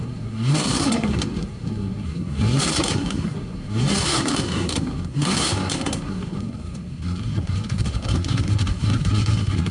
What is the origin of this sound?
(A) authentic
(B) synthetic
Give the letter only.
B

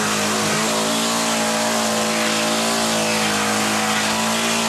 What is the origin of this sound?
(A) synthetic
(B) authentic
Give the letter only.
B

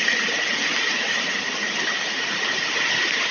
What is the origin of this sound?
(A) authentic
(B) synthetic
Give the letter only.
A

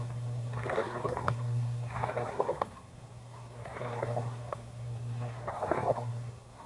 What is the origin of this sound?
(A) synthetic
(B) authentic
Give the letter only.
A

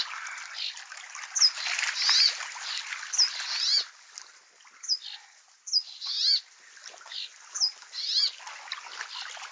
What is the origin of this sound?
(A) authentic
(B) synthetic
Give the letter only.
A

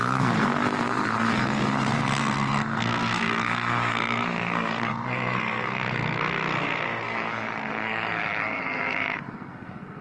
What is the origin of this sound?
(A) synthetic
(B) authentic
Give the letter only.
A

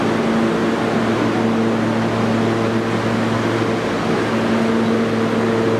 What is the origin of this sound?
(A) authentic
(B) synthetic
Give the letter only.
A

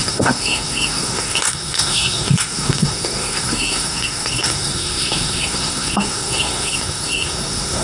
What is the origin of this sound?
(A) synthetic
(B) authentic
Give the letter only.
A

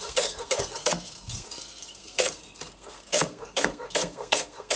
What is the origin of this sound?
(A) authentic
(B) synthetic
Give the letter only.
B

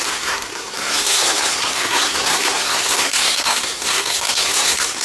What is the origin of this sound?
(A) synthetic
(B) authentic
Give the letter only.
A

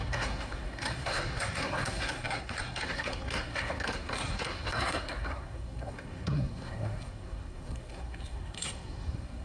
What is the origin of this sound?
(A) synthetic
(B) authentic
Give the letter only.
A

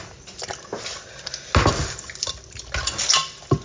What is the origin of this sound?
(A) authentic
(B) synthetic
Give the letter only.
A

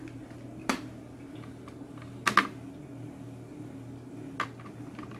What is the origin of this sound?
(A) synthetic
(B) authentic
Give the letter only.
B